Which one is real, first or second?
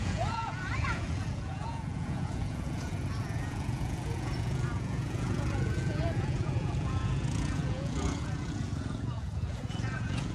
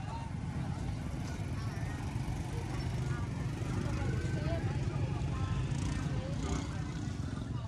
second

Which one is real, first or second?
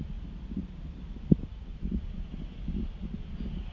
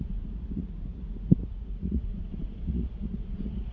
first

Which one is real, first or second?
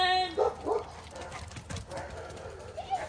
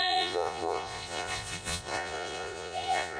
first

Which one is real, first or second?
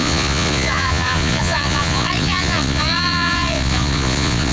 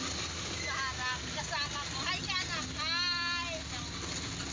second